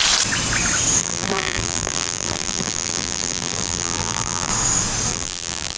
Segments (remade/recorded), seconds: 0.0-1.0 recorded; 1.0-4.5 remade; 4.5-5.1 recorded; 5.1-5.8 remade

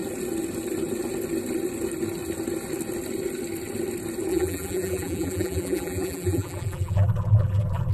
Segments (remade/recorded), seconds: 0.0-4.3 recorded; 4.3-7.9 remade

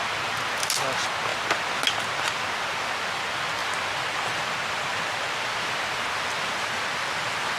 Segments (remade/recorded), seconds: 0.0-7.6 recorded

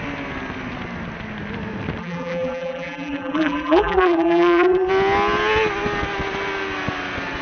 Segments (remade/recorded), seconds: 0.0-2.0 recorded; 2.0-4.9 remade; 4.9-7.4 recorded

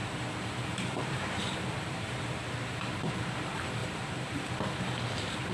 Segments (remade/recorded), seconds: 0.0-3.3 remade; 3.3-3.8 recorded; 3.8-4.5 remade; 4.5-5.5 recorded

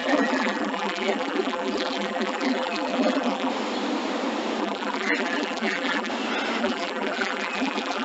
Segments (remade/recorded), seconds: 0.0-3.5 remade; 3.5-4.6 recorded; 4.6-6.1 remade; 6.1-6.6 recorded; 6.6-8.0 remade

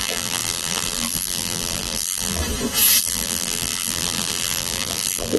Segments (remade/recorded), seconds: 0.0-2.4 remade; 2.4-3.0 recorded; 3.0-5.4 remade

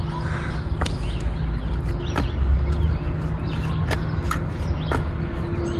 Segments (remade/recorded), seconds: 0.0-5.8 recorded